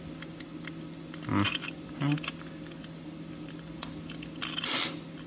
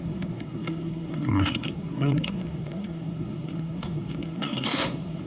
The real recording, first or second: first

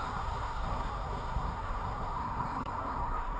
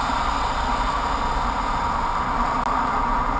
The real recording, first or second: second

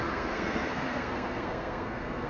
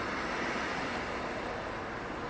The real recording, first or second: second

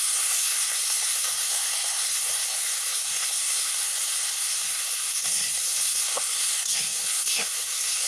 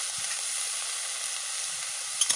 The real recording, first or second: second